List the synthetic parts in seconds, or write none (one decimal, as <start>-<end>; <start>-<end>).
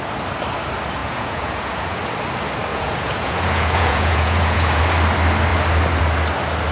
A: 1.0-2.0; 2.7-4.8